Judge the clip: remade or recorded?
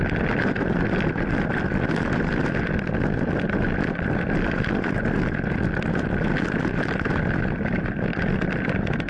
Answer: recorded